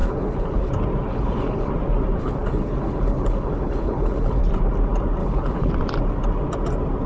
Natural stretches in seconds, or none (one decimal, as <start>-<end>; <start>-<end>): 0.7-1.1; 1.7-2.2; 4.4-5.2; 5.7-7.1

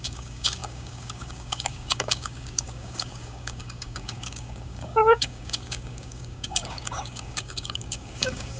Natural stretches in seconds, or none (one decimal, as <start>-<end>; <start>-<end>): none

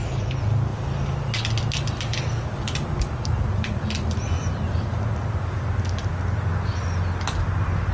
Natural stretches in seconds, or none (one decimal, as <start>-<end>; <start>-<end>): 0.0-2.6; 4.8-7.9

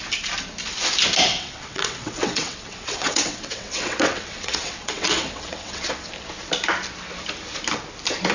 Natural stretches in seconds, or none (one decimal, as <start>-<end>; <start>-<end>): 0.0-1.3; 6.1-8.3

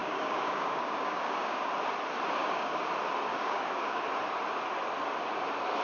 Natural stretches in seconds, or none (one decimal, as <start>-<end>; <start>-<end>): 1.7-2.4; 2.9-3.3; 4.0-5.8

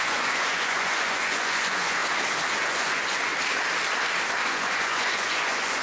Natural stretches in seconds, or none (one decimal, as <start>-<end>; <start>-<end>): 2.0-2.5; 3.3-4.5

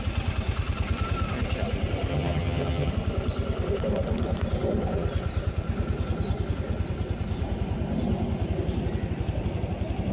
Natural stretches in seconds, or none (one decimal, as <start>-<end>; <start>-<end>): 0.0-2.1; 2.9-10.1